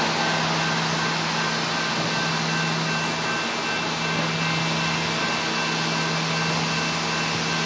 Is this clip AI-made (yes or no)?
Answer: no